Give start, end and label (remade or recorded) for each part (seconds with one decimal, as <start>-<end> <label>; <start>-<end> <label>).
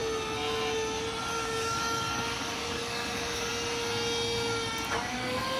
0.0-1.3 recorded; 1.3-3.5 remade; 3.5-4.9 recorded; 4.9-5.6 remade